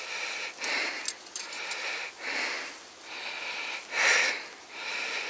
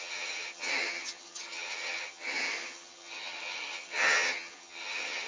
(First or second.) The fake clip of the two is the second